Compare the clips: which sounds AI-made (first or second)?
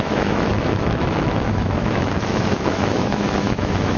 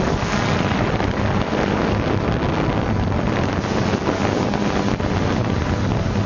first